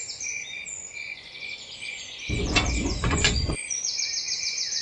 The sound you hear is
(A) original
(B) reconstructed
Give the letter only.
B